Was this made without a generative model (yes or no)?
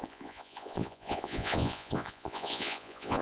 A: no